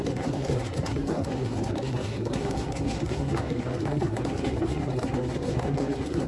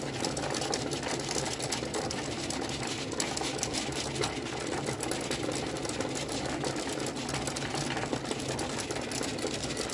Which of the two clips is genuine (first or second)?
second